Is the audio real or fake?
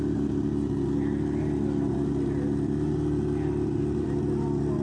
real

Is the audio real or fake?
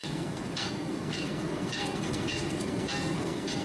fake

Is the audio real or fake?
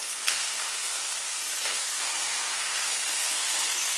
fake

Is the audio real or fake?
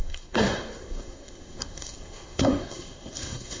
fake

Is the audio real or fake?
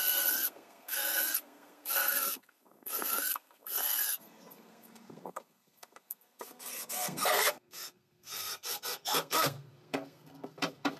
fake